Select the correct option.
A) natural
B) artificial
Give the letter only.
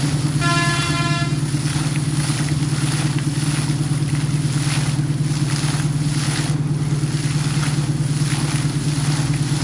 A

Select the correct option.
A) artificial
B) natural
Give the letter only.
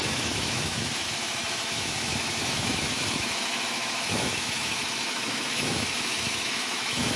A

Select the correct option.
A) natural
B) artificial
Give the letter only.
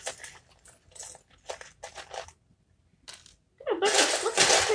A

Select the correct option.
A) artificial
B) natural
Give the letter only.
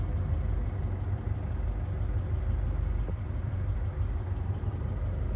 B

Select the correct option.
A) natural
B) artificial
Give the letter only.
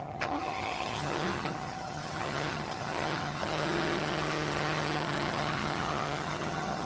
B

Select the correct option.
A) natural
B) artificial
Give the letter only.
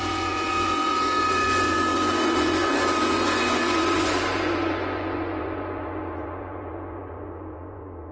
B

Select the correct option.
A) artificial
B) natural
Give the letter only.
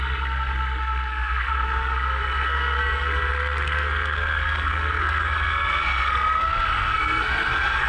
A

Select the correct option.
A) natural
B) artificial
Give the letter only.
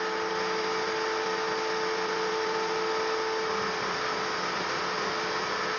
A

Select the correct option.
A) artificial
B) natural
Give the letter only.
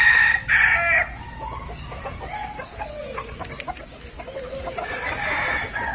B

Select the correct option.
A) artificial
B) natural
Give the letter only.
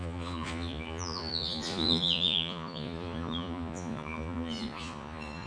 A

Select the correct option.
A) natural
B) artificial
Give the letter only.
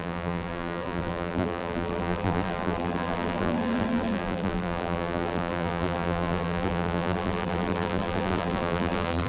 B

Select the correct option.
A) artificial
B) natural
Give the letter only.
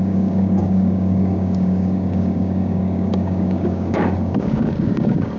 A